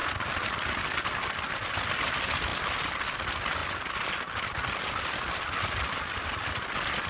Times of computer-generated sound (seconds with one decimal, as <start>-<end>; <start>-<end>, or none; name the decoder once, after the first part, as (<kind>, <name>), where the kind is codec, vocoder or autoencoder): none